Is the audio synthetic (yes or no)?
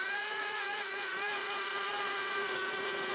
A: yes